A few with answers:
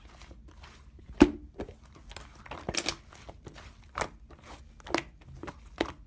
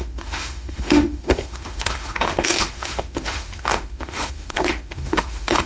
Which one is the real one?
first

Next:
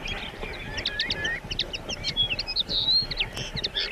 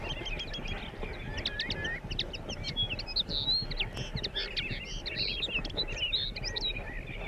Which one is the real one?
second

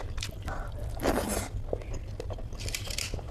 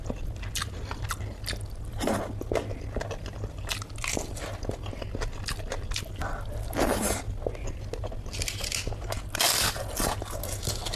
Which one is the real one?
second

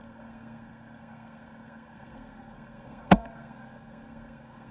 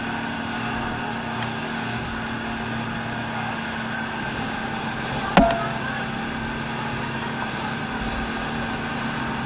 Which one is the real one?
second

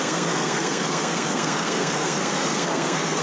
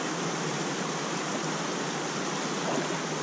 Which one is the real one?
second